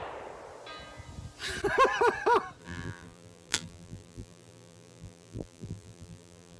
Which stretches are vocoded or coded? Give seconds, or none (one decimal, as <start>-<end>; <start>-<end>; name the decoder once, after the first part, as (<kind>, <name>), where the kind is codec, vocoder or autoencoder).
2.6-6.6 (vocoder, BigVGAN v2)